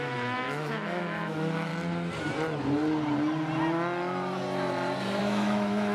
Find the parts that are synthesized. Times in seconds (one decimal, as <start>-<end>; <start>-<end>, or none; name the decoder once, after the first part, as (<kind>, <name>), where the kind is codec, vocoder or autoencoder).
0.0-1.7 (autoencoder, DAC-VAE); 5.2-5.9